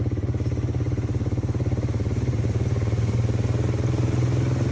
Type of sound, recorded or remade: recorded